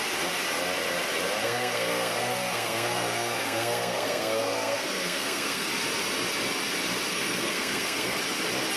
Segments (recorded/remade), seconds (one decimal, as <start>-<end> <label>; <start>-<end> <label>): 0.0-1.4 recorded; 1.4-5.7 remade; 5.7-7.1 recorded; 7.1-8.2 remade; 8.2-8.8 recorded